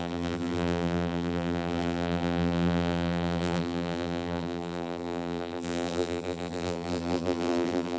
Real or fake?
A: fake